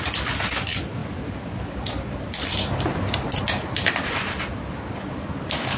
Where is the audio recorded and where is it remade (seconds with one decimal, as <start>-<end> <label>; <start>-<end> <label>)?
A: 0.0-5.8 recorded